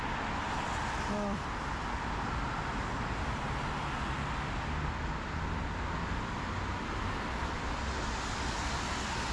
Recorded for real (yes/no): yes